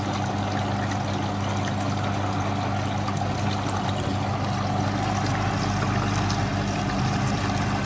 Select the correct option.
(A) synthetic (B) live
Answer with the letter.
B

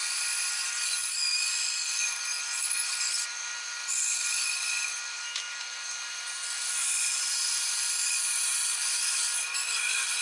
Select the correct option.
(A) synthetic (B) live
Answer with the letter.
A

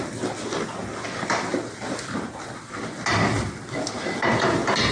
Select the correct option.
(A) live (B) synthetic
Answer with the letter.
A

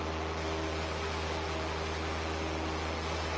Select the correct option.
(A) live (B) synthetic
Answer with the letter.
A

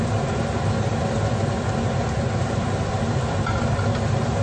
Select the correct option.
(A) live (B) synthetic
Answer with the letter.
A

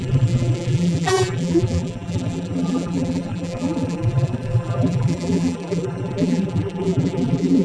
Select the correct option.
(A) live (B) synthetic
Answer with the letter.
B